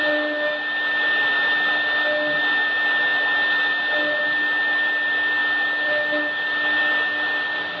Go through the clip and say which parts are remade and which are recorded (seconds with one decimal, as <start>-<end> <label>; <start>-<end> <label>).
0.0-7.8 recorded